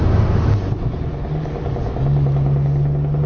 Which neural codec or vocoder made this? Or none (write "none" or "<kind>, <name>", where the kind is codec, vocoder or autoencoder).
none